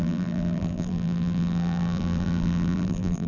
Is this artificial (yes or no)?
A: yes